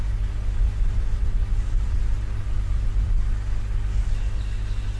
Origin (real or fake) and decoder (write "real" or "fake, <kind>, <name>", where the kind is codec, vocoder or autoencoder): real